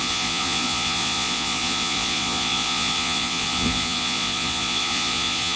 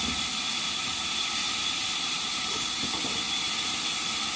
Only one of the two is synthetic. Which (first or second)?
first